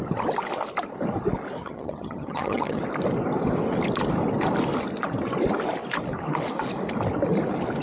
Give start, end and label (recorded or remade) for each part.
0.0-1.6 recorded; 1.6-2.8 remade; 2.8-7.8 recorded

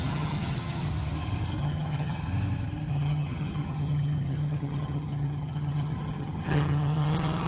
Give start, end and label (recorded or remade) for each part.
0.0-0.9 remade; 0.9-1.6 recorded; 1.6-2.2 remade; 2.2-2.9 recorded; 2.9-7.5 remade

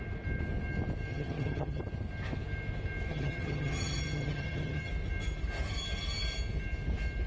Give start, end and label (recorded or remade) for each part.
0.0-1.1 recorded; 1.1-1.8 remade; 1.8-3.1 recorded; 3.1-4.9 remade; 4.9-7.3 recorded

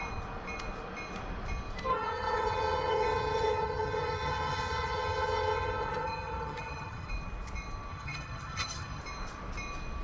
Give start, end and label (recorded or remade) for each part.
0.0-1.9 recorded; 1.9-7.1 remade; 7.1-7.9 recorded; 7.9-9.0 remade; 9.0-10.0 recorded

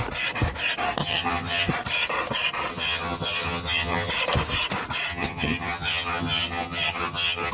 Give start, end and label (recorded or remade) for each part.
0.0-1.0 recorded; 1.0-1.7 remade; 1.7-2.7 recorded; 2.7-4.1 remade; 4.1-5.1 recorded; 5.1-7.5 remade